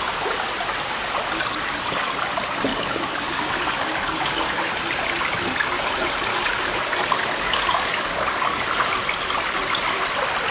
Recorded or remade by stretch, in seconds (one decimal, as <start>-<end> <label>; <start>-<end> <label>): 0.0-2.7 recorded; 2.7-4.7 remade; 4.7-6.3 recorded; 6.3-8.6 remade; 8.6-10.5 recorded